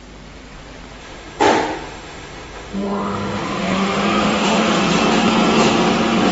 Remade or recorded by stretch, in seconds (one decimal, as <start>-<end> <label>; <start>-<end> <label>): 0.0-1.0 recorded; 1.0-4.8 remade; 4.8-6.3 recorded